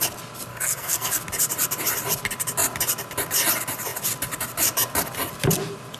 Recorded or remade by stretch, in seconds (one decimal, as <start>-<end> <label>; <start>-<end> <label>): 0.0-0.5 recorded; 0.5-1.2 remade; 1.2-6.0 recorded